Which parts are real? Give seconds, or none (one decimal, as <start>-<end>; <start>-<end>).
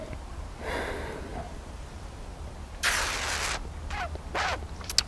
0.0-5.1